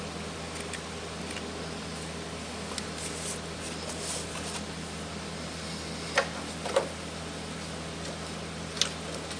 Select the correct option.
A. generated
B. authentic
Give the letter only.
B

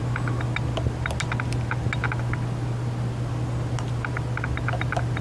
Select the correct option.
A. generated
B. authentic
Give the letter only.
B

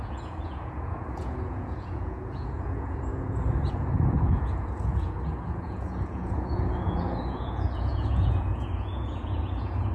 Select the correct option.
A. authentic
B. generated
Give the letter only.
B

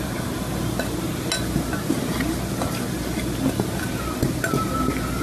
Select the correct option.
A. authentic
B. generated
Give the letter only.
A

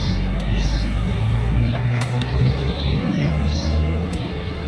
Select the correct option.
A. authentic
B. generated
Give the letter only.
B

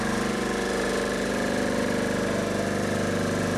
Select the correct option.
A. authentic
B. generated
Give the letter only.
B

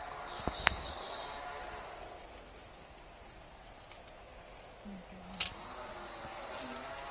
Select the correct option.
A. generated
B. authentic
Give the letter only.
B